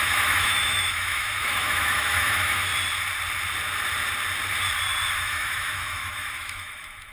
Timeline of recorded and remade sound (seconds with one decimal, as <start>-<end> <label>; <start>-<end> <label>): 0.0-2.7 remade; 2.7-5.2 recorded; 5.2-7.1 remade